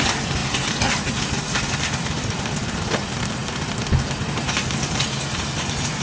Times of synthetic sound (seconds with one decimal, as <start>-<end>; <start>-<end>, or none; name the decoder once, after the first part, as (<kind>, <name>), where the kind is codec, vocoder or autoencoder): 0.0-0.4 (vocoder, BigVGAN v2); 1.4-3.4; 5.6-6.0

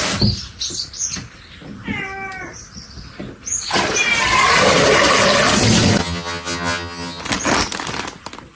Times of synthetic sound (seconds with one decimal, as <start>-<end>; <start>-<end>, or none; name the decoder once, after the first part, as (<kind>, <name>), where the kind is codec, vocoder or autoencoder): 6.0-7.2 (vocoder, HiFi-GAN)

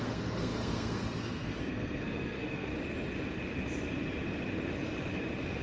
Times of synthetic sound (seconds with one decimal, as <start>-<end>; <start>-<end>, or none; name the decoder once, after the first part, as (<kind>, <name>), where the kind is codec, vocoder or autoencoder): 0.0-2.7 (codec, SNAC)